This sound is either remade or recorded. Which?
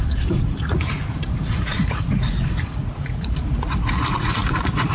remade